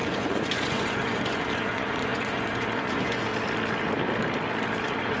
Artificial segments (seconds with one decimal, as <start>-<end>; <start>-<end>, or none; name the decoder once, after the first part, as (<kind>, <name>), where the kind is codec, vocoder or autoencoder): 0.0-3.3 (vocoder, Vocos); 4.8-5.2